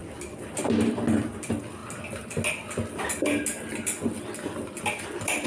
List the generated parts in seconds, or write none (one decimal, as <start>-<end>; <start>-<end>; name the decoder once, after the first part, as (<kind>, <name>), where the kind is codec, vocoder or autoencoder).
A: none